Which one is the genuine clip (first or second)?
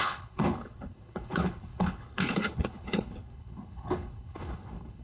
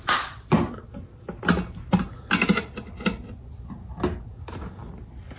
second